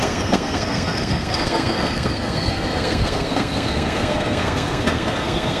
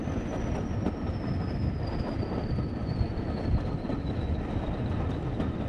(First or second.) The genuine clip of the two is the second